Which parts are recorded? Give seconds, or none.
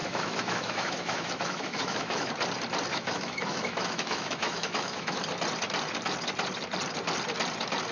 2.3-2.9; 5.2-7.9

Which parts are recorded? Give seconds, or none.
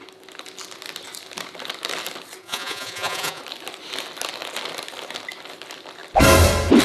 0.0-2.4; 3.4-6.8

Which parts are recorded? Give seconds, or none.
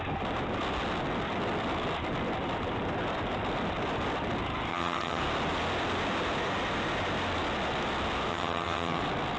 0.0-4.7; 5.2-8.3; 9.0-9.4